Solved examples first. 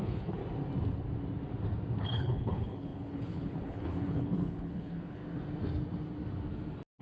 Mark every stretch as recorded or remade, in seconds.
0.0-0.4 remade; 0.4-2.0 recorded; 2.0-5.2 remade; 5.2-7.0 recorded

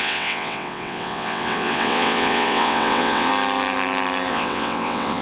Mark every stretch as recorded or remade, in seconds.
0.0-3.3 remade; 3.3-4.3 recorded; 4.3-5.2 remade

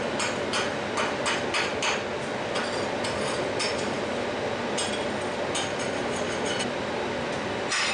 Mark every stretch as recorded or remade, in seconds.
0.0-7.9 recorded

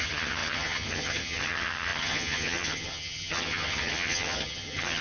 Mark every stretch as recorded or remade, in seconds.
0.0-5.0 remade